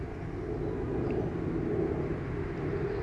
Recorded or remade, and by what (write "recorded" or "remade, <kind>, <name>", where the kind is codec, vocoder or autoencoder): recorded